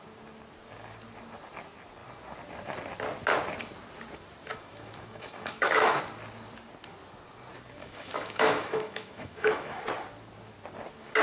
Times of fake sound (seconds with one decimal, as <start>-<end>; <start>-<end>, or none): 4.5-6.0; 7.8-9.8